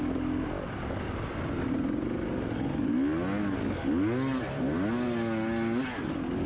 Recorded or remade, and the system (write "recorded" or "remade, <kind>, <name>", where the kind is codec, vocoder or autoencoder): recorded